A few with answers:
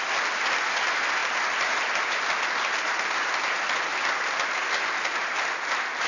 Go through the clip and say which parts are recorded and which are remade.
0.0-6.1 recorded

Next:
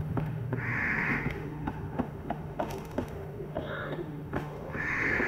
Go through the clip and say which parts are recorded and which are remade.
0.0-5.3 remade

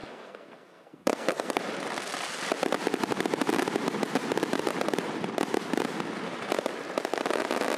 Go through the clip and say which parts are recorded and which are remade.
0.0-1.6 remade; 1.6-7.8 recorded

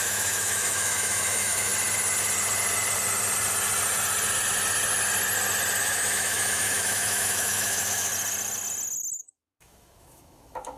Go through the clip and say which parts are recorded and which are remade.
0.0-1.7 remade; 1.7-5.8 recorded; 5.8-8.1 remade; 8.1-9.2 recorded; 9.2-10.8 remade

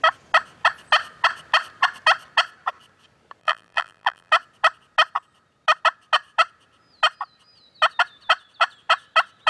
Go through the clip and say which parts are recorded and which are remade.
0.0-3.4 recorded; 3.4-4.3 remade; 4.3-9.5 recorded

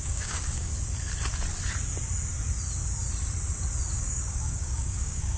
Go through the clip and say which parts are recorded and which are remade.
0.0-0.7 remade; 0.7-3.9 recorded; 3.9-5.4 remade